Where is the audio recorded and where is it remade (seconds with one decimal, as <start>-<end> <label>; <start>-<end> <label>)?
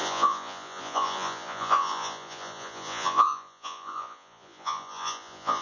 0.0-5.6 remade